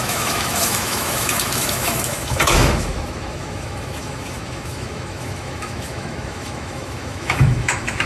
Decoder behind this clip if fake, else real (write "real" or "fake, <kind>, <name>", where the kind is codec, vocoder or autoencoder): fake, autoencoder, DAC-VAE